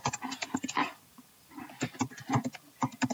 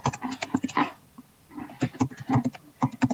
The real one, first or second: second